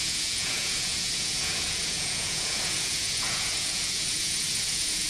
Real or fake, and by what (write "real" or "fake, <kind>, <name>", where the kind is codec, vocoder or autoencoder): fake, vocoder, Vocos